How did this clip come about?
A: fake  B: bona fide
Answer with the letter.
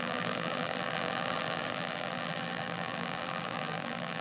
A